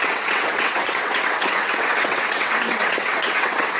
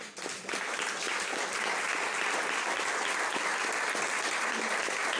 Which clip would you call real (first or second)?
second